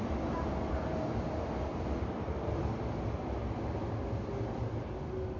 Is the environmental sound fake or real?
real